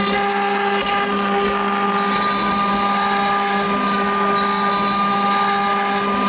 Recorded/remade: recorded